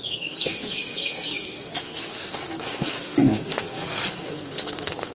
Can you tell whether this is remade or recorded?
remade